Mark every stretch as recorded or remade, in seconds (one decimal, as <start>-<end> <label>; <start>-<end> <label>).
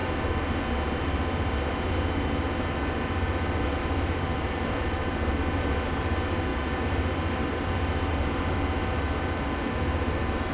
0.0-10.5 recorded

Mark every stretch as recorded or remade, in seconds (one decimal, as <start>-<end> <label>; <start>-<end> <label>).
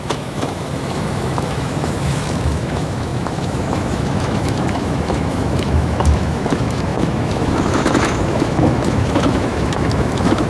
0.0-10.5 remade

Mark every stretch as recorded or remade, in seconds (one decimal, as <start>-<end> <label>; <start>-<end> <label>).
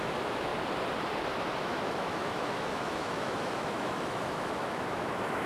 0.0-0.5 remade; 0.5-1.6 recorded; 1.6-5.5 remade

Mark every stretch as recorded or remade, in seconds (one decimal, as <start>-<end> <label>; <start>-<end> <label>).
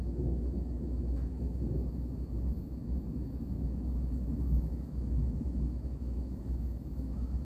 0.0-7.4 remade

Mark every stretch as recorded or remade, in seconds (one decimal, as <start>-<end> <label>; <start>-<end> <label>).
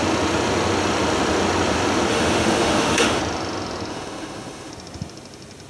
0.0-2.1 recorded; 2.1-3.2 remade; 3.2-3.9 recorded; 3.9-4.7 remade; 4.7-5.7 recorded